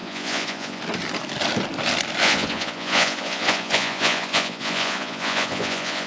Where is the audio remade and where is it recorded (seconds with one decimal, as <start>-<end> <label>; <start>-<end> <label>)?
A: 0.0-0.8 remade; 0.8-2.2 recorded; 2.2-6.1 remade